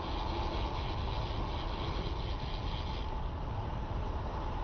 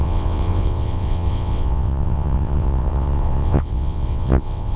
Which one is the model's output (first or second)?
second